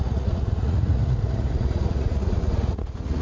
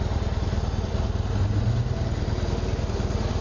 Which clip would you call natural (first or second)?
second